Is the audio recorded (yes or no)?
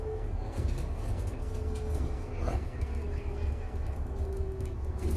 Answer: no